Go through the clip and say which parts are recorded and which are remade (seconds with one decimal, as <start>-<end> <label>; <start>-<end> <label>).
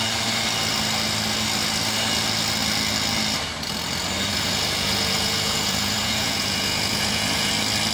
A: 0.0-4.3 recorded; 4.3-7.5 remade; 7.5-7.9 recorded